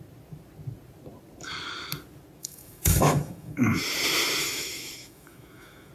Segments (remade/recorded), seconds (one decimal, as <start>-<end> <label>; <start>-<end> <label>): 0.0-2.4 recorded; 2.4-3.8 remade; 3.8-4.4 recorded; 4.4-5.9 remade